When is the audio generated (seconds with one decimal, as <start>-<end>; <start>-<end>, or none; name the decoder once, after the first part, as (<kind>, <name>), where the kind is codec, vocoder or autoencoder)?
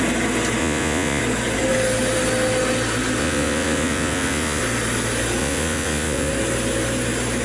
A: 0.6-1.2 (vocoder, Vocos); 3.2-4.6; 5.4-6.3